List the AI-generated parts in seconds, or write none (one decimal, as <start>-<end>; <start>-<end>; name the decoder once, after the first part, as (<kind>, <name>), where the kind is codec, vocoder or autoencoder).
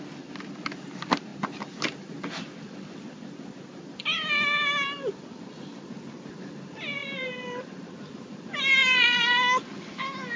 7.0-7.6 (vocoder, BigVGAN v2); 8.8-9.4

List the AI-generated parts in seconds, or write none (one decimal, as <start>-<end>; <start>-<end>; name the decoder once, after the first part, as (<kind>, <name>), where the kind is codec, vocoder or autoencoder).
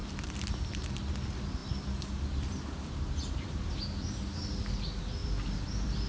0.0-1.1 (vocoder, BigVGAN v2); 5.2-6.1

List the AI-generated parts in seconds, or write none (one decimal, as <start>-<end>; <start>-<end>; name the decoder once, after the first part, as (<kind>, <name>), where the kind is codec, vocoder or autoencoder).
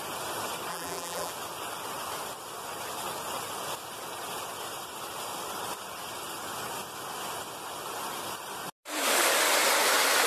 0.7-1.3 (vocoder, BigVGAN v2)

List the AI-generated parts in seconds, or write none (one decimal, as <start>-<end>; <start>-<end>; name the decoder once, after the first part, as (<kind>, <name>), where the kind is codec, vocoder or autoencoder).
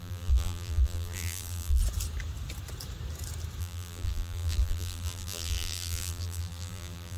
0.0-1.8 (vocoder, BigVGAN v2); 3.6-7.2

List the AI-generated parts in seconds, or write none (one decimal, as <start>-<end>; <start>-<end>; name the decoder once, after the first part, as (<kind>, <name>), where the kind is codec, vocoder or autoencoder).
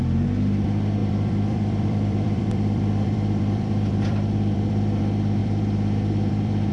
1.0-5.0 (vocoder, BigVGAN v2); 5.4-6.7